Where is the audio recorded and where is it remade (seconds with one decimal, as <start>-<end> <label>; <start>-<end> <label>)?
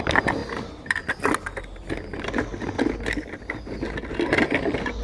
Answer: 0.0-0.4 recorded; 0.4-3.4 remade; 3.4-5.0 recorded